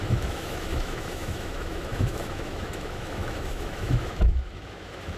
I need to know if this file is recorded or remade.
remade